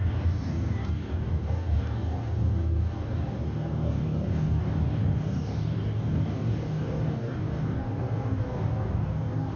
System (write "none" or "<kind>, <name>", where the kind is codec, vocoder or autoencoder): codec, DAC